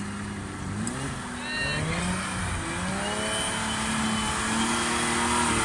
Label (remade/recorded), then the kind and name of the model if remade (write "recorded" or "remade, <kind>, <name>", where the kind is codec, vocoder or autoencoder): recorded